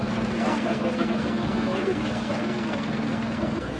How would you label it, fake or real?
fake